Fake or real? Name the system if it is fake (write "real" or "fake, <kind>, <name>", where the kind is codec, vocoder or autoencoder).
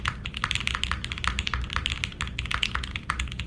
real